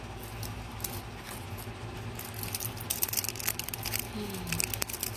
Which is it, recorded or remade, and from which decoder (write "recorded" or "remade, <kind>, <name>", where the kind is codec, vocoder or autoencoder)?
recorded